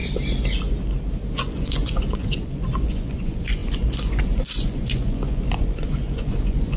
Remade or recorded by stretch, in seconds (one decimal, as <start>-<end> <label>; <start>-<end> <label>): 0.0-1.3 recorded; 1.3-6.8 remade